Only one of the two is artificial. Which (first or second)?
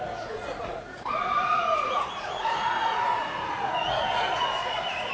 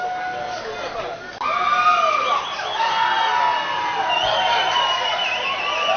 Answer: first